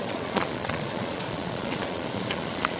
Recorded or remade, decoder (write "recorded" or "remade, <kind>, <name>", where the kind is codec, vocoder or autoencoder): remade, vocoder, Vocos